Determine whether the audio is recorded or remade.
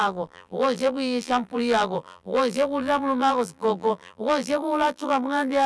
remade